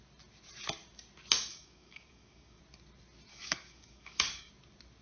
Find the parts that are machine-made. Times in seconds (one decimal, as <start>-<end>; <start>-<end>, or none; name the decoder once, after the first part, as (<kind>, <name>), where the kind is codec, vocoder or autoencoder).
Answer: 1.5-2.6 (codec, DAC); 3.3-4.5